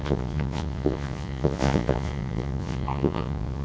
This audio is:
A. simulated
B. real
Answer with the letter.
A